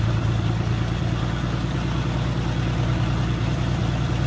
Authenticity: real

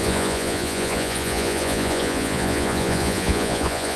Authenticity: fake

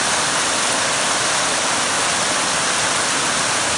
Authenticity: real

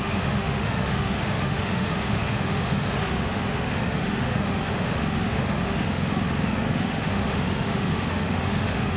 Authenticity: fake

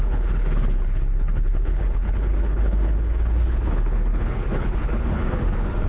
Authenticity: fake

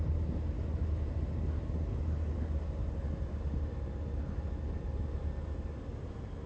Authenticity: real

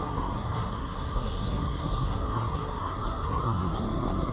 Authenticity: fake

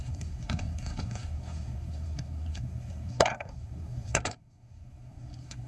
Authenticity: fake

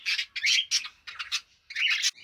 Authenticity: real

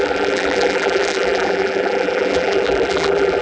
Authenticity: fake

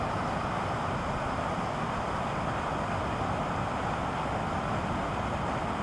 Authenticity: real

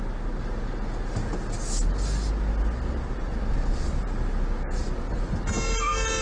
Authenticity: real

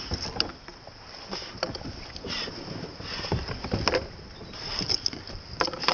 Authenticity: real